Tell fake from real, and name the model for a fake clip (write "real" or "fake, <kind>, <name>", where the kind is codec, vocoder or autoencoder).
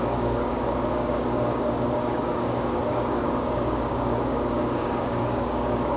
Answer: fake, codec, DAC